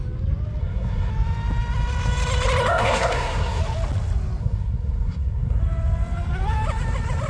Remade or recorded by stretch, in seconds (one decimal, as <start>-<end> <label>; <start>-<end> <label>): 0.0-0.6 recorded; 0.6-1.1 remade; 1.1-2.7 recorded; 2.7-3.6 remade; 3.6-4.4 recorded; 4.4-5.6 remade; 5.6-7.3 recorded